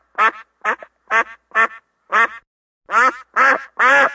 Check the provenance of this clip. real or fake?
real